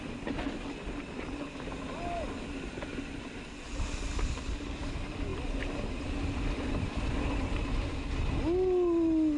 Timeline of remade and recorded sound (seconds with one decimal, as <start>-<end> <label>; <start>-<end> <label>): 0.0-9.4 recorded

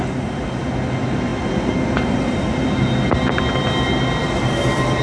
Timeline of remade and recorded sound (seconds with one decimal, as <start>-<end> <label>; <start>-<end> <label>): 0.0-5.0 recorded

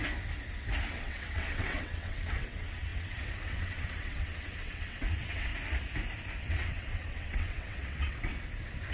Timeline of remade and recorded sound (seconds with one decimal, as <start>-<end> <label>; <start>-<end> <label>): 0.0-0.9 recorded; 0.9-5.5 remade; 5.5-6.4 recorded; 6.4-8.3 remade; 8.3-8.9 recorded

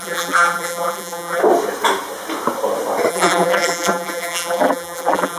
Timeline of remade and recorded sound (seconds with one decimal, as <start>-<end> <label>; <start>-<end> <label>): 0.0-1.4 remade; 1.4-3.1 recorded; 3.1-5.4 remade

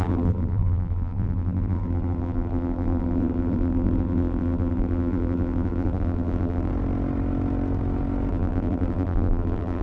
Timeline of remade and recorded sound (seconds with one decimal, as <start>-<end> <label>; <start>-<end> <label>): 0.0-6.7 remade; 6.7-8.3 recorded; 8.3-9.8 remade

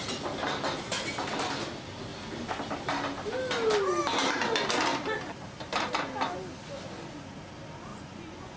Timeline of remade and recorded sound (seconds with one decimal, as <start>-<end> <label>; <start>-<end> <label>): 0.0-7.9 recorded; 7.9-8.6 remade

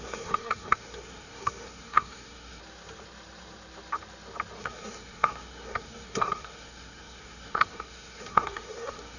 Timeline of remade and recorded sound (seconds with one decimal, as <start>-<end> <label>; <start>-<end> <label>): 0.0-2.6 remade; 2.6-4.6 recorded; 4.6-9.2 remade

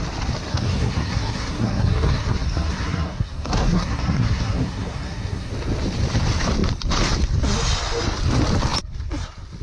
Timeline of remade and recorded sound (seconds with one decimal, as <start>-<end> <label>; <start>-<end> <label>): 0.0-0.5 recorded; 0.5-5.5 remade; 5.5-9.6 recorded